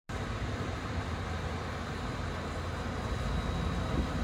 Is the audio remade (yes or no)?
no